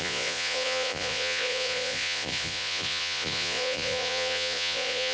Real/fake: fake